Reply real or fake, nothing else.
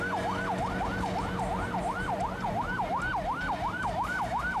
real